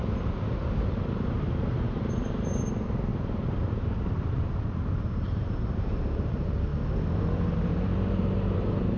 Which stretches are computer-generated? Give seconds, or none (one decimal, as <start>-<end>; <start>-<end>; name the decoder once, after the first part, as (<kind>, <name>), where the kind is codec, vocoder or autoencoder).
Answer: 0.0-6.7 (vocoder, BigVGAN v2); 7.5-9.0